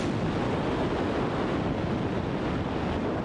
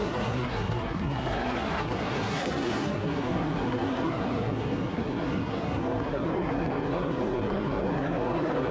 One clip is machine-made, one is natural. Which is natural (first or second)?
first